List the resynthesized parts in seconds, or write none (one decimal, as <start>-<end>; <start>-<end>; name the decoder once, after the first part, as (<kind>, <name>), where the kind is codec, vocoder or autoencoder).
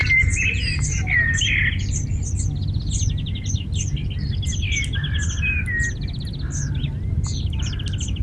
0.0-1.8 (vocoder, BigVGAN v2)